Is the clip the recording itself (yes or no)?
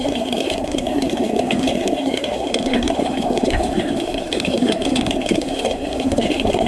no